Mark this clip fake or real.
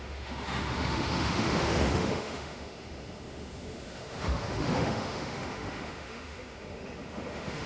fake